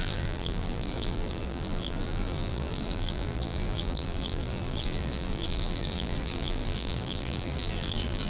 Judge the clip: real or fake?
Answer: fake